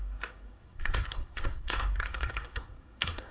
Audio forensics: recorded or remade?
remade